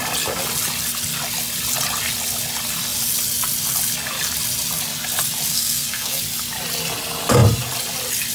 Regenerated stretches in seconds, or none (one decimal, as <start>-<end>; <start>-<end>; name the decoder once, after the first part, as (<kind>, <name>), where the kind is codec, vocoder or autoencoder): 5.5-6.2 (codec, SNAC)